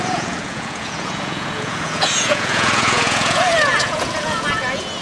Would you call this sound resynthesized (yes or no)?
yes